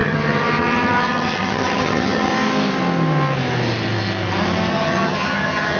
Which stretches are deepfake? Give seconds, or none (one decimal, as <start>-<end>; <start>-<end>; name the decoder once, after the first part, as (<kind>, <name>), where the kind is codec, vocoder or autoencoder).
0.0-2.3 (vocoder, HiFi-GAN); 4.7-5.8